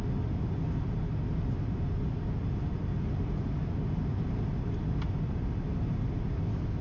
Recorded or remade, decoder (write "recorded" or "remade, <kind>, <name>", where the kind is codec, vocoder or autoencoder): recorded